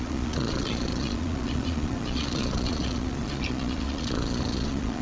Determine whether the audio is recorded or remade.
remade